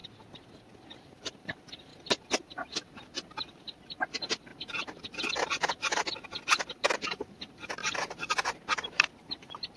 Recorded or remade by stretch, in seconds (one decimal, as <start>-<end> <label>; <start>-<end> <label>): 0.0-1.0 recorded; 1.0-1.9 remade; 1.9-2.4 recorded; 2.4-4.5 remade; 4.5-6.6 recorded; 6.6-9.8 remade